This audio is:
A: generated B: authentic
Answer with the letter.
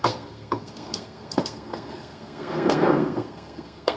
A